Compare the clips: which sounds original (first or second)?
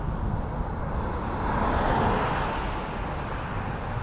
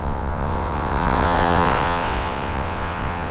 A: first